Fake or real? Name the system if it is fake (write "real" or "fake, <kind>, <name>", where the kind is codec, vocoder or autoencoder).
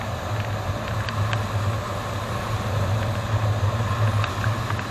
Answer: real